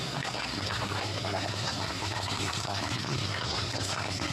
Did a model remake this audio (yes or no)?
yes